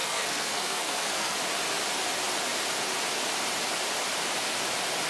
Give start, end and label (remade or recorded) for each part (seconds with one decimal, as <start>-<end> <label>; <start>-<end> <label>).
0.0-1.4 remade; 1.4-5.1 recorded